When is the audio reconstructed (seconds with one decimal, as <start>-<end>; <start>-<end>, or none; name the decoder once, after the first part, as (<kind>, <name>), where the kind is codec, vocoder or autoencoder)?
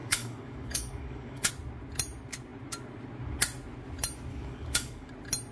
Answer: 0.0-1.5 (codec, DAC); 4.3-5.1